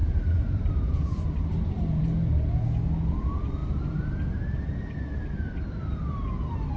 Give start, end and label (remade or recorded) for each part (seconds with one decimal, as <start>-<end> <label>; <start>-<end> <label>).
0.0-2.0 remade; 2.0-3.6 recorded; 3.6-5.4 remade; 5.4-6.8 recorded